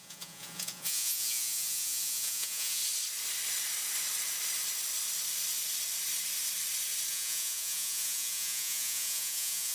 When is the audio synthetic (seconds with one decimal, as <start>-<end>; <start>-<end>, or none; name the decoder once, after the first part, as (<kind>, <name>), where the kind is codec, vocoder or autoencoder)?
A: 0.0-2.8 (vocoder, Vocos); 7.1-9.7